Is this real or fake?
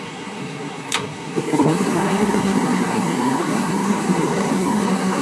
fake